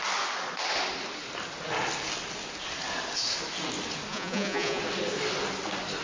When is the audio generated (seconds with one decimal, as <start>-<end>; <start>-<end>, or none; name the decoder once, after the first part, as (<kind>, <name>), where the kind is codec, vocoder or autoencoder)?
4.1-4.8 (vocoder, Vocos)